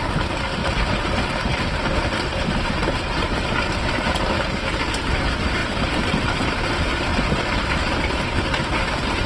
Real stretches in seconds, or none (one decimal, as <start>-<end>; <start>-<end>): 0.0-0.6; 1.7-5.6; 6.5-7.1; 8.2-9.3